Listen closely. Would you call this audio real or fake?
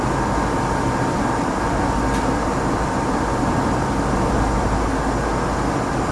real